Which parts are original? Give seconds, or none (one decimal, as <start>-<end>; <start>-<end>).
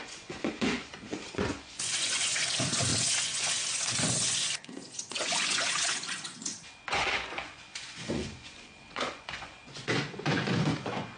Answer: none